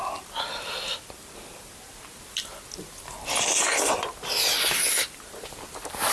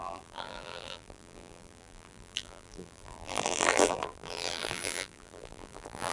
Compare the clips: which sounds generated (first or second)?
second